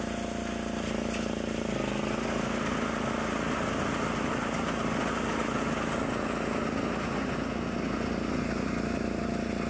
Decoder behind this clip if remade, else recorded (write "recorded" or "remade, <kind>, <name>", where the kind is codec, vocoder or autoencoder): recorded